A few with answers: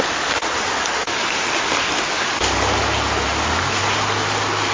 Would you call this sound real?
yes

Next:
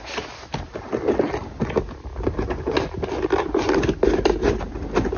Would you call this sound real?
yes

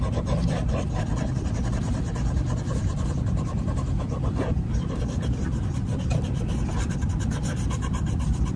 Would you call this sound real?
no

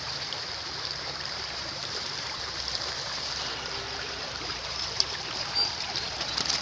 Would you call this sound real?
no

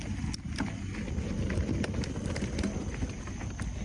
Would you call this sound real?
yes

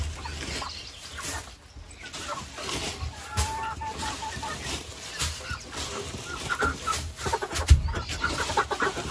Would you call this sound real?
yes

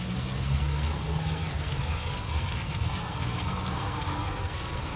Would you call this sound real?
no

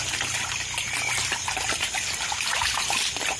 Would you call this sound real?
yes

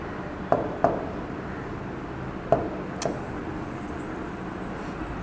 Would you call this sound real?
yes